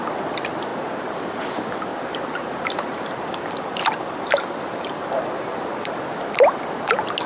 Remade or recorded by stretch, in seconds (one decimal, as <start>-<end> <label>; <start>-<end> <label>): 0.0-0.7 recorded; 0.7-1.2 remade; 1.2-1.9 recorded; 1.9-6.0 remade; 6.0-7.3 recorded